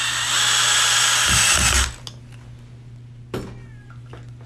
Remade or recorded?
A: recorded